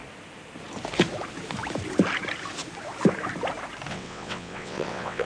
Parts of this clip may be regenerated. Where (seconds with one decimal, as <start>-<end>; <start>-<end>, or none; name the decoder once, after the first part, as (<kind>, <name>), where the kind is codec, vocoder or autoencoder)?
3.9-5.3 (vocoder, WaveNeXt)